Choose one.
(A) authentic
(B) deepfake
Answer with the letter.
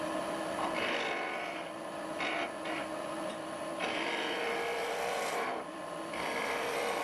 A